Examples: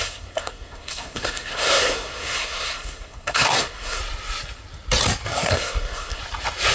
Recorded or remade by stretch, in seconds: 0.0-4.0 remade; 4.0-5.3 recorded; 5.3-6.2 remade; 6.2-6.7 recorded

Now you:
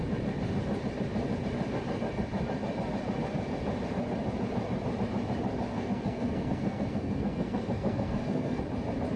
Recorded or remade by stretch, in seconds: 0.0-5.7 recorded; 5.7-8.6 remade; 8.6-9.2 recorded

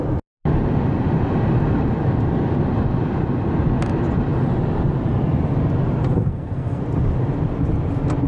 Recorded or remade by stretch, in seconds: 0.0-6.0 recorded; 6.0-6.8 remade; 6.8-8.3 recorded

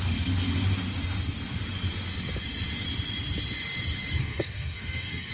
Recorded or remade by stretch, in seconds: 0.0-4.2 recorded; 4.2-5.3 remade

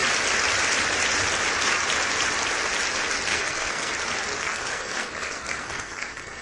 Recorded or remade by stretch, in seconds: 0.0-3.3 recorded; 3.3-3.9 remade; 3.9-4.3 recorded; 4.3-6.4 remade

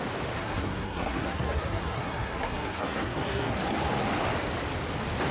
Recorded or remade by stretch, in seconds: 0.0-0.4 recorded; 0.4-3.6 remade; 3.6-5.3 recorded

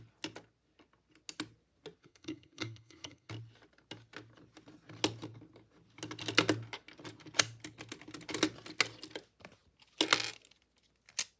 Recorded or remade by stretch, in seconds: 0.0-2.0 recorded; 2.0-3.3 remade; 3.3-11.4 recorded